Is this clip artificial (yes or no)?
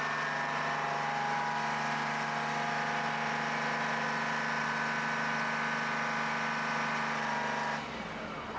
no